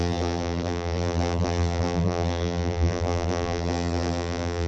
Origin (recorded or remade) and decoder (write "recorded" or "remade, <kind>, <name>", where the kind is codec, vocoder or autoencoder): remade, vocoder, BigVGAN v2